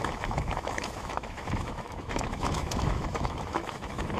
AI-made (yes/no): yes